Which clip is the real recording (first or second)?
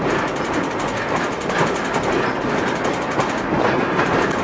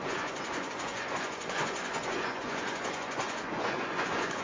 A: first